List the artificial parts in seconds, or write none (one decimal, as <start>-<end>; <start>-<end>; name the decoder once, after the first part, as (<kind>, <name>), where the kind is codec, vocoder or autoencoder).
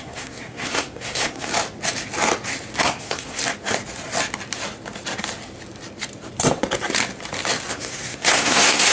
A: 0.0-1.5 (codec, SNAC); 2.8-3.4; 7.7-8.9